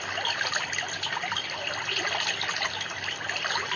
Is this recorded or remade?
recorded